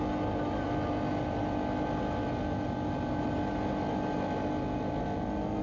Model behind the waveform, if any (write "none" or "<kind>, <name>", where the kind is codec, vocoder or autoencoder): none